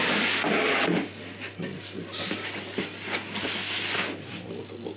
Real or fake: real